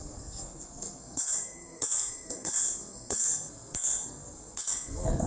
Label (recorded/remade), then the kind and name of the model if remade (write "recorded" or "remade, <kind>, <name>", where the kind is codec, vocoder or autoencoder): remade, codec, SNAC